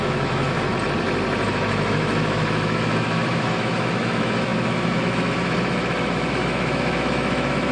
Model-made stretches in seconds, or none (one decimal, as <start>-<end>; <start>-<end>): 0.0-0.7; 1.5-7.7

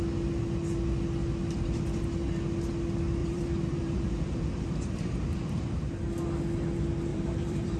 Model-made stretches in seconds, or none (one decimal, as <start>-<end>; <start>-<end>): 3.2-5.6; 7.1-7.8

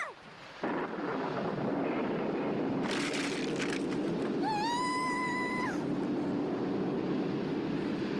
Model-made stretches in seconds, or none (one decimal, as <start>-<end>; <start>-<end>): 1.1-6.0

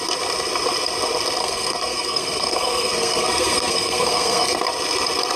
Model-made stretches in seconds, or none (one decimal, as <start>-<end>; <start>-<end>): 1.4-4.6

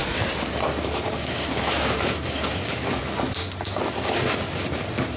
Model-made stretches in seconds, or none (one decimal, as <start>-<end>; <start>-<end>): none